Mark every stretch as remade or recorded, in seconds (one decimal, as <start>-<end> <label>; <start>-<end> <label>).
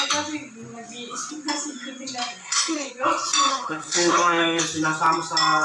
0.0-2.4 recorded; 2.4-2.9 remade; 2.9-3.5 recorded; 3.5-4.6 remade; 4.6-5.6 recorded